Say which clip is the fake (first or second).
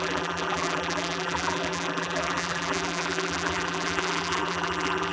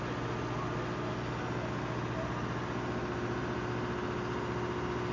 first